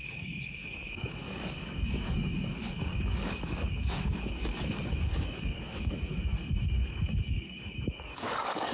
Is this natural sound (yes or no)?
no